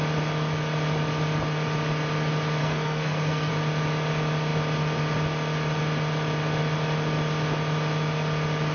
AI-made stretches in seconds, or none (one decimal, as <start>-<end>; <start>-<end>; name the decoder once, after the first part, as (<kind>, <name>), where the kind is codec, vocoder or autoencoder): 2.6-3.5 (codec, SNAC)